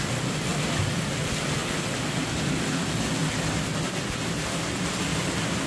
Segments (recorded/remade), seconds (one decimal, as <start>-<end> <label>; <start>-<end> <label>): 0.0-0.5 recorded; 0.5-1.2 remade; 1.2-5.1 recorded; 5.1-5.7 remade